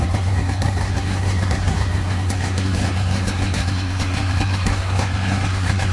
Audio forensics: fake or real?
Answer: fake